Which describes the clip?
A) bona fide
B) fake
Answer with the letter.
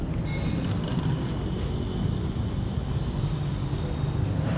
A